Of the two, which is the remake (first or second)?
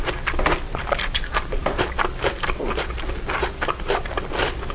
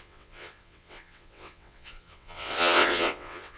second